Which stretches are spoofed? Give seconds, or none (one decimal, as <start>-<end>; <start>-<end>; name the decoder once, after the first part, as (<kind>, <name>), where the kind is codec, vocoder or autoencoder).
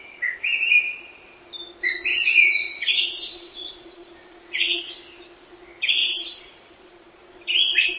2.1-4.9 (vocoder, Vocos); 6.0-7.3